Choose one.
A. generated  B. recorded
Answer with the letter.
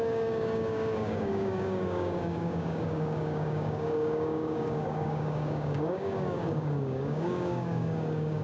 A